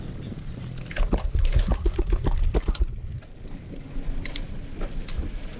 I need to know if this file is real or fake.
real